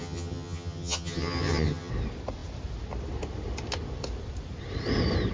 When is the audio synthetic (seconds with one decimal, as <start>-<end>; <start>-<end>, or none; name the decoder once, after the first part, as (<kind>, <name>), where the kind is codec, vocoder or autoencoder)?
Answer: 0.0-1.9 (vocoder, HiFi-GAN)